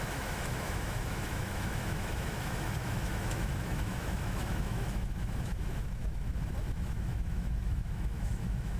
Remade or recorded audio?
remade